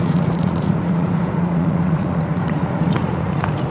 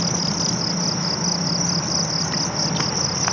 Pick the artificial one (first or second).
first